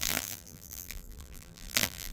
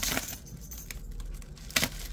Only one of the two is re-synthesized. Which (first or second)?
first